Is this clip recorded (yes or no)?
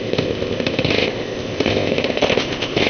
no